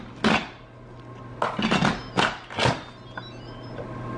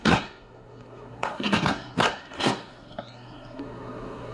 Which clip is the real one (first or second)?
first